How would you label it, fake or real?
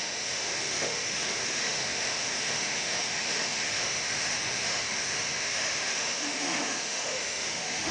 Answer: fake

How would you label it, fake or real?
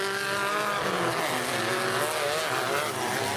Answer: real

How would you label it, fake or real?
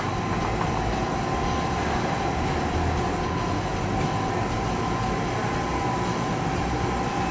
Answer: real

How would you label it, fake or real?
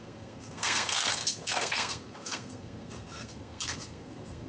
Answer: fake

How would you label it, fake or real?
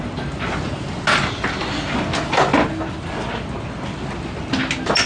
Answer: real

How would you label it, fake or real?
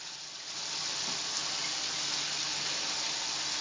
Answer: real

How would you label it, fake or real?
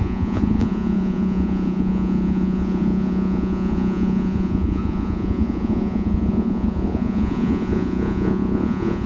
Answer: fake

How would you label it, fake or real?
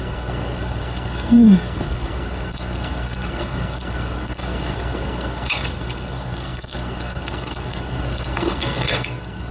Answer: fake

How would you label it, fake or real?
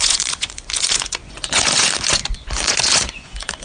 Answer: fake